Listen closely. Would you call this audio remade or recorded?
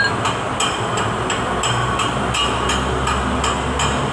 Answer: recorded